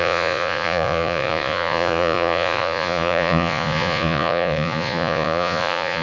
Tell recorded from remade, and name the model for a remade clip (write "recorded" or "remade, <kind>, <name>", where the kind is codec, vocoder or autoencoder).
remade, vocoder, Vocos